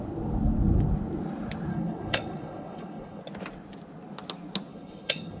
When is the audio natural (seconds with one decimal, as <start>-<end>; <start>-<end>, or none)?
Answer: 0.0-1.7; 3.2-4.7